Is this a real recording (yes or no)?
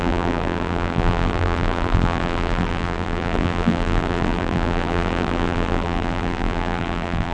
no